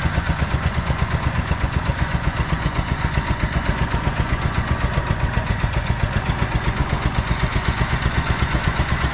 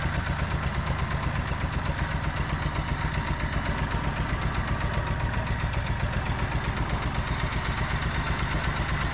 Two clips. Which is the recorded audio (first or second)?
second